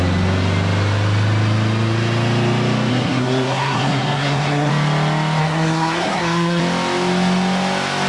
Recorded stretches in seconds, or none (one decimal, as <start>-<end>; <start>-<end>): 0.0-2.9; 4.7-5.4; 6.6-8.1